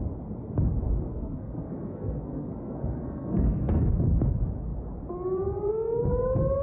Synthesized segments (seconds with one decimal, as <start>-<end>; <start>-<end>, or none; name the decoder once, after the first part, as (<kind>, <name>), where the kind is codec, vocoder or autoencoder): 1.1-3.9 (codec, SNAC)